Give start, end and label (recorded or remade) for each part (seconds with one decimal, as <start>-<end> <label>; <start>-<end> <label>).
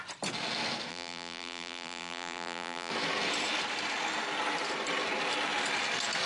0.0-0.9 recorded; 0.9-2.9 remade; 2.9-6.3 recorded